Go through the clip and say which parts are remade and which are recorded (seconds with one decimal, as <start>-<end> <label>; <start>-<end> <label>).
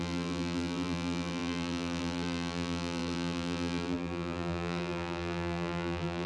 0.0-6.3 remade